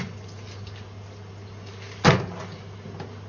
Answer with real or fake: real